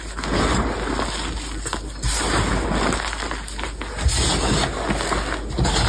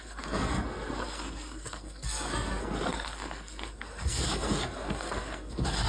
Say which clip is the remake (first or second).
second